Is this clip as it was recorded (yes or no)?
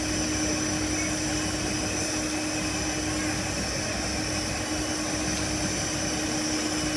yes